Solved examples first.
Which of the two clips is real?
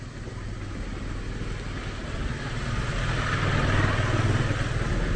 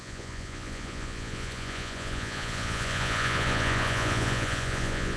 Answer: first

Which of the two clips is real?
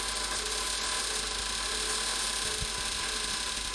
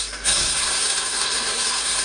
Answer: first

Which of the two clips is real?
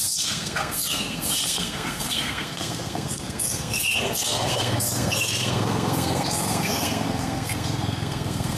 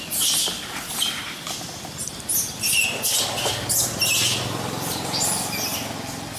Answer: second